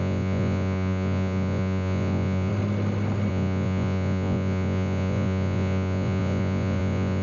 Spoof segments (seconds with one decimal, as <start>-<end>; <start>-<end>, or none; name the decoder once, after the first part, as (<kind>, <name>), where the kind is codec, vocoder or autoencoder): 0.0-2.5 (vocoder, Vocos); 3.3-7.2